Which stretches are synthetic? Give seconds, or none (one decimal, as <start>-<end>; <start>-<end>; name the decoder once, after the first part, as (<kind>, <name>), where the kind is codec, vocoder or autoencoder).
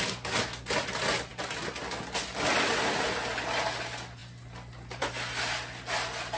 none